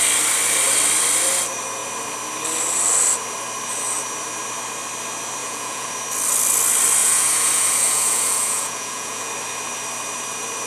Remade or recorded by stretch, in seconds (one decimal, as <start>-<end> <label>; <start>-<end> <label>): 0.0-5.4 recorded; 5.4-5.9 remade; 5.9-7.0 recorded; 7.0-9.3 remade; 9.3-10.7 recorded